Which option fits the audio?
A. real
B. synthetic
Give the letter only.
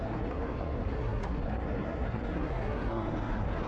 B